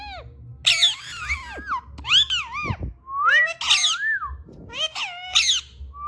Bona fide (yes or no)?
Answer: yes